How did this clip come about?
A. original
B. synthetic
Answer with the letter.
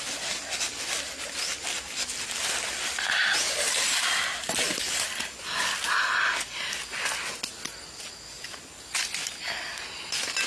A